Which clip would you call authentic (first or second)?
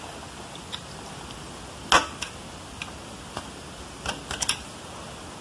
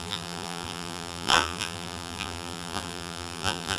first